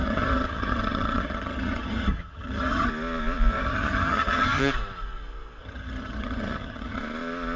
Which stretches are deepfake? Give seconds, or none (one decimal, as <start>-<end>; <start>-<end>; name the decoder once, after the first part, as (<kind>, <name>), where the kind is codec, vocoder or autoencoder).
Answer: 0.0-2.9 (vocoder, HiFi-GAN); 3.5-4.7; 5.6-7.0